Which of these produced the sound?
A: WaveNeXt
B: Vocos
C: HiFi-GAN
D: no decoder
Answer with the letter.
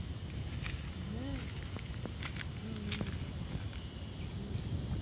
D